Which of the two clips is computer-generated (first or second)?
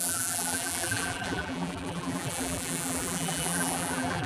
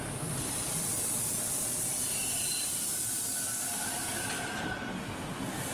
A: first